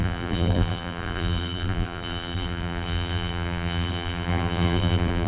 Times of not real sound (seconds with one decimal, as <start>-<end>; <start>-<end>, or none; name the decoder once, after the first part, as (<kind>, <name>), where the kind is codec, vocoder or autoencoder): 0.0-5.3 (vocoder, BigVGAN v2)

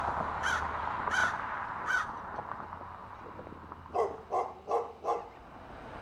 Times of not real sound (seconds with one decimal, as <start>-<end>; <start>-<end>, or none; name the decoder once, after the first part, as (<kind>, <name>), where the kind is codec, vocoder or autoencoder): none

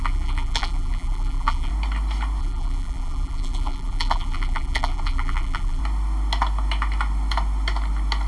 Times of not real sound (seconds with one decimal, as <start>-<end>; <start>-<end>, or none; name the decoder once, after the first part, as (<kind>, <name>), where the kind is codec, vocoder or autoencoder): 0.0-1.7 (vocoder, BigVGAN v2); 2.4-5.8

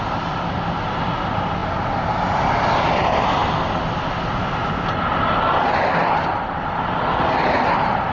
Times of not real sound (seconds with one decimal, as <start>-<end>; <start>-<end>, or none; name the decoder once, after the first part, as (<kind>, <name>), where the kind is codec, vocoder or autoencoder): none

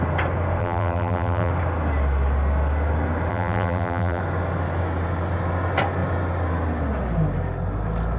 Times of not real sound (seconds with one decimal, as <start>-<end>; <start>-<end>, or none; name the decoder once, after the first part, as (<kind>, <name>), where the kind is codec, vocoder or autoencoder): 0.6-1.5 (vocoder, BigVGAN v2); 3.3-4.2

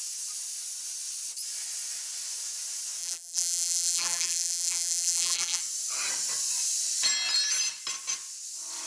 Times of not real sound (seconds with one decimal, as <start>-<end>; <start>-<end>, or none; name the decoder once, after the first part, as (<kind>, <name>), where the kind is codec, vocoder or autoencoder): 3.0-5.6 (vocoder, BigVGAN v2)

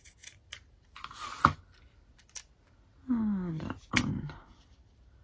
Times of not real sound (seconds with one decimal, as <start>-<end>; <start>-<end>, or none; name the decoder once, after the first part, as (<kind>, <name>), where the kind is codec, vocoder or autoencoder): 0.0-0.4 (vocoder, BigVGAN v2); 3.5-5.2

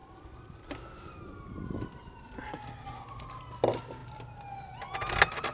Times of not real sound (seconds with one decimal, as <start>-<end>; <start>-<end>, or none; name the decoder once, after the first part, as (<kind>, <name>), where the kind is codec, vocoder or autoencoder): none